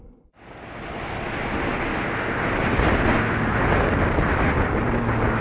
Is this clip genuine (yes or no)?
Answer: yes